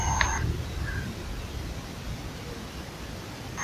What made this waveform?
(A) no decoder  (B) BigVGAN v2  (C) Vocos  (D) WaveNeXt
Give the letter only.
A